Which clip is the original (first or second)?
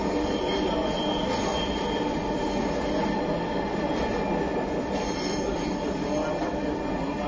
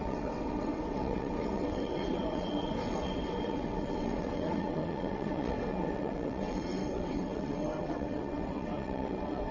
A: first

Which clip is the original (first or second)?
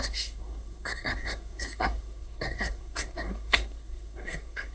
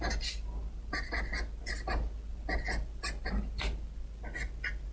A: second